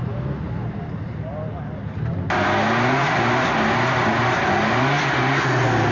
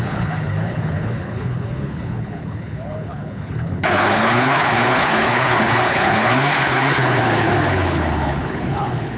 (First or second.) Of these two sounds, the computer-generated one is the second